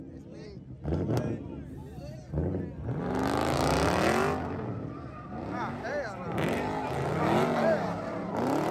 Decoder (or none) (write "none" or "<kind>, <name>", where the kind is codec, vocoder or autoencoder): none